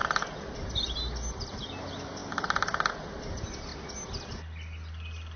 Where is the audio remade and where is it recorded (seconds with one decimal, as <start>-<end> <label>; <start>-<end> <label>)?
0.0-5.4 recorded

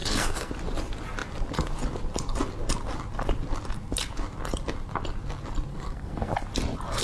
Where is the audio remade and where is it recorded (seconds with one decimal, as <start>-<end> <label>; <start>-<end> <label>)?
0.0-0.5 remade; 0.5-5.7 recorded; 5.7-6.3 remade; 6.3-7.0 recorded

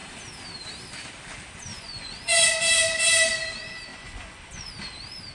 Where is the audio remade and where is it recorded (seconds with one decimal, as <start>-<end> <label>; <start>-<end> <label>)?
0.0-1.7 recorded; 1.7-2.5 remade; 2.5-3.9 recorded; 3.9-4.7 remade; 4.7-5.3 recorded

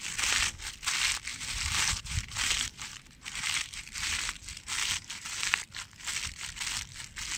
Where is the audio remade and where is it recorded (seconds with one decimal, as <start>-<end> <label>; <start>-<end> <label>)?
0.0-1.3 recorded; 1.3-5.7 remade; 5.7-7.4 recorded

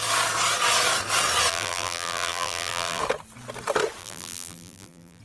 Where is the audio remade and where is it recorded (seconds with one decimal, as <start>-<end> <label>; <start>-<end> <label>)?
0.0-1.5 recorded; 1.5-3.0 remade; 3.0-4.0 recorded; 4.0-5.2 remade

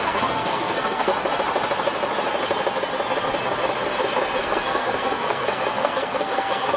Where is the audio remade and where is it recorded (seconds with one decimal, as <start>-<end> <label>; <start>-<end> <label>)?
0.0-1.1 remade; 1.1-4.4 recorded; 4.4-6.8 remade